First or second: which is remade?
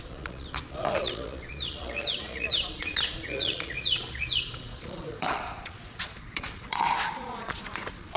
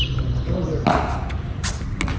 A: first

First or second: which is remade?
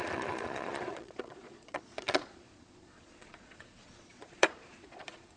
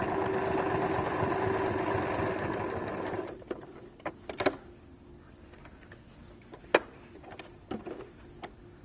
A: first